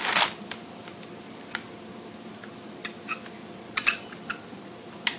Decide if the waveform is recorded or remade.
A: recorded